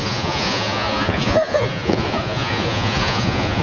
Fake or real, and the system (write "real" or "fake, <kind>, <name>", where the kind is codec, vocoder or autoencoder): fake, vocoder, Vocos